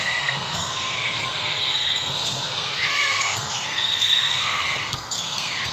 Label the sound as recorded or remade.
remade